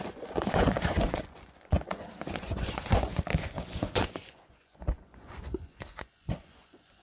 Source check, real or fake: fake